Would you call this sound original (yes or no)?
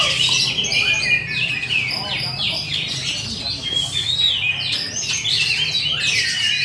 yes